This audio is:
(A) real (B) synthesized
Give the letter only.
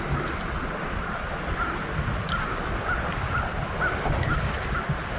A